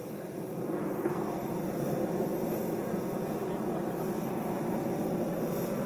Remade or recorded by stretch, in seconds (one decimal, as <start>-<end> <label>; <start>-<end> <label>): 0.0-0.8 recorded; 0.8-1.5 remade; 1.5-5.9 recorded